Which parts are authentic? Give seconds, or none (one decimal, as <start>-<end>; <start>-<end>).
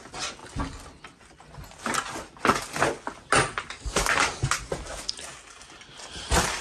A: 0.0-6.6